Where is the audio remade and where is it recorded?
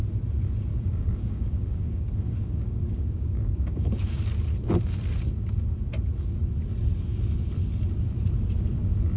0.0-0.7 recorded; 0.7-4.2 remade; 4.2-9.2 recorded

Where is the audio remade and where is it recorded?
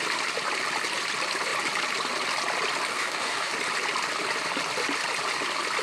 0.0-2.9 recorded; 2.9-3.5 remade; 3.5-5.8 recorded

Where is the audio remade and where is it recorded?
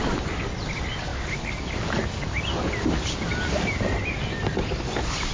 0.0-1.1 recorded; 1.1-2.4 remade; 2.4-5.3 recorded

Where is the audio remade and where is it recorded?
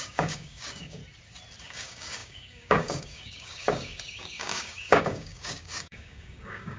0.0-1.0 remade; 1.0-1.6 recorded; 1.6-6.8 remade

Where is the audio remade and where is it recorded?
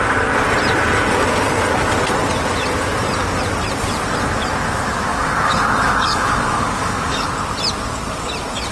0.0-5.1 recorded; 5.1-7.3 remade; 7.3-8.7 recorded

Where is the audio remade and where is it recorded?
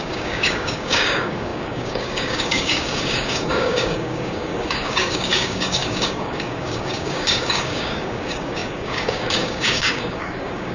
0.0-10.7 remade